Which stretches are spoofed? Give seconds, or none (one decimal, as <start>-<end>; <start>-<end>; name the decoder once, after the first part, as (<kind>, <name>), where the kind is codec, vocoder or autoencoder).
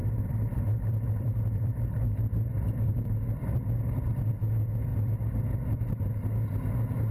0.0-4.3 (vocoder, BigVGAN v2); 4.9-5.8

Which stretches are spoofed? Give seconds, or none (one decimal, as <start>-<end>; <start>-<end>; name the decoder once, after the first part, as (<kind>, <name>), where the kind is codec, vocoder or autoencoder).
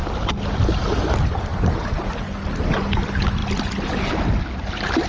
none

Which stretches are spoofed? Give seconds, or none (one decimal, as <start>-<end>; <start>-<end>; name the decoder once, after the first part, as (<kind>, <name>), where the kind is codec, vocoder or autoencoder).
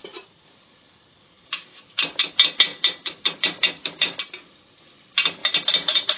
0.0-2.2 (vocoder, BigVGAN v2); 2.7-4.2; 5.4-6.2